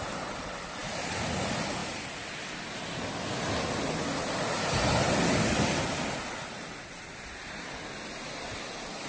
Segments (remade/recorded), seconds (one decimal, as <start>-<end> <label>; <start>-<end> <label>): 0.0-9.1 recorded